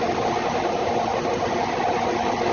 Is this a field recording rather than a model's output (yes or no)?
yes